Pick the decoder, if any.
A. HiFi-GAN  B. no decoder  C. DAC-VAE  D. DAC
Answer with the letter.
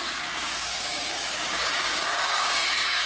D